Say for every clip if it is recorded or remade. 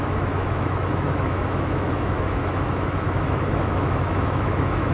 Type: remade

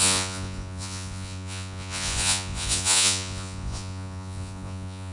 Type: remade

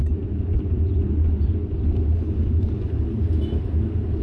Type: recorded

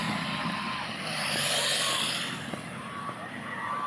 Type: recorded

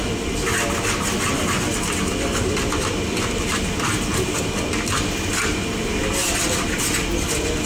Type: recorded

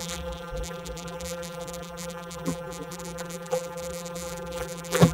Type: remade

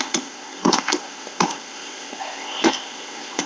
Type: remade